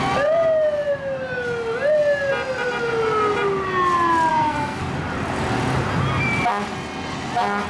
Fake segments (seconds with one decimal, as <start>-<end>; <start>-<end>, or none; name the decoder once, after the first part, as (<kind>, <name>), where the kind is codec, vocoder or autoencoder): 4.3-4.8 (codec, SNAC)